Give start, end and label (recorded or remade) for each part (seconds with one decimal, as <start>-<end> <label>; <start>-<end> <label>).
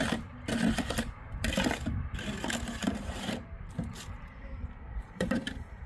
0.0-2.8 recorded; 2.8-5.9 remade